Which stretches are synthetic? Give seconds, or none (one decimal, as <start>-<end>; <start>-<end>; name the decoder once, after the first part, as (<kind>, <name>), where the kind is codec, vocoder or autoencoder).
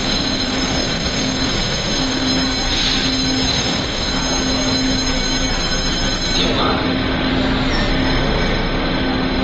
0.0-2.3 (autoencoder, DAC-VAE); 3.5-4.1; 6.6-7.3; 7.9-9.4